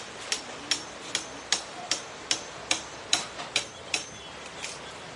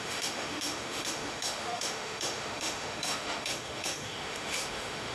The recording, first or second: first